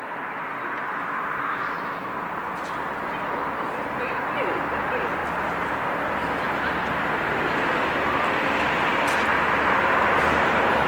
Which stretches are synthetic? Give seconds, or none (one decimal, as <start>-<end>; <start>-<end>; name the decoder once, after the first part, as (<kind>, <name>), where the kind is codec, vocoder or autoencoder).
0.9-2.1 (autoencoder, DAC-VAE)